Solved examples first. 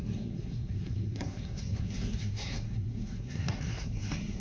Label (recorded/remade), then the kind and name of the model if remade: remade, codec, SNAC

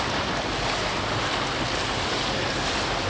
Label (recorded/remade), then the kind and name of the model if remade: recorded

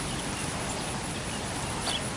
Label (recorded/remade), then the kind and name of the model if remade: recorded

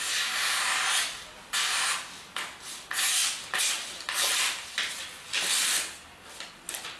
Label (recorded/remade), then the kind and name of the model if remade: recorded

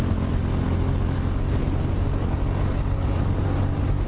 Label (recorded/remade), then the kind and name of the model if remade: recorded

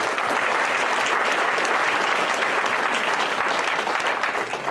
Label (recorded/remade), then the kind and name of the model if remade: recorded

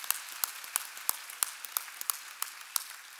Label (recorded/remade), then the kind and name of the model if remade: recorded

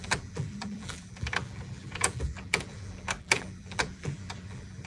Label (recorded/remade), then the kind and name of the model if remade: remade, vocoder, BigVGAN v2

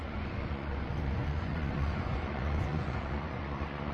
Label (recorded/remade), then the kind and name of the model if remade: remade, vocoder, Vocos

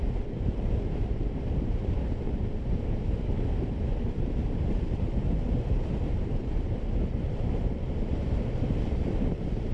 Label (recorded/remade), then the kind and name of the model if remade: remade, vocoder, BigVGAN v2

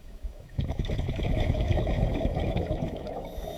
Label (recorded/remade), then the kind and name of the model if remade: remade, autoencoder, DAC-VAE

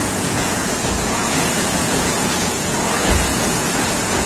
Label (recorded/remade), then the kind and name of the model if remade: remade, vocoder, Vocos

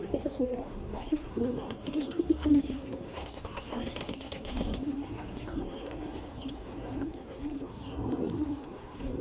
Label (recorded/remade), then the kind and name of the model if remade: remade, codec, SNAC